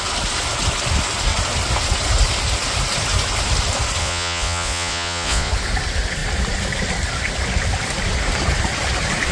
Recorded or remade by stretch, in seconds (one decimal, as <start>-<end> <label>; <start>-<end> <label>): 0.0-4.0 recorded; 4.0-5.5 remade; 5.5-9.3 recorded

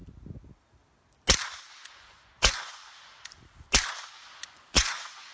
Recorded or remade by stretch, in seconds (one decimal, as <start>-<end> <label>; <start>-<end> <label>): 0.0-1.9 recorded; 1.9-2.8 remade; 2.8-4.1 recorded; 4.1-5.3 remade

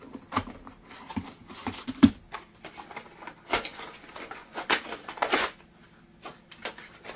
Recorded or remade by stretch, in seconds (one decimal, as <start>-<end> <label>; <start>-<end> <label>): 0.0-1.6 recorded; 1.6-2.2 remade; 2.2-3.5 recorded; 3.5-5.6 remade; 5.6-7.2 recorded